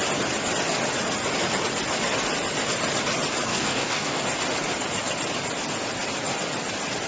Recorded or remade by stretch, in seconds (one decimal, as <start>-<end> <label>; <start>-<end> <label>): 0.0-3.5 recorded; 3.5-4.2 remade; 4.2-7.1 recorded